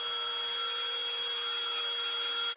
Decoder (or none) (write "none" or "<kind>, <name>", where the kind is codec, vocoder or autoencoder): none